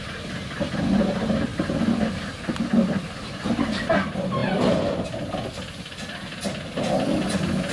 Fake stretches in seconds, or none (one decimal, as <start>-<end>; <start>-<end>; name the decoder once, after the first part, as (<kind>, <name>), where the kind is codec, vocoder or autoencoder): none